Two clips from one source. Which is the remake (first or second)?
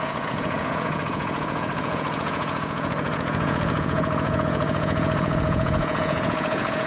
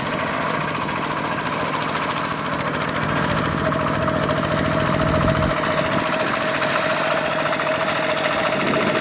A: first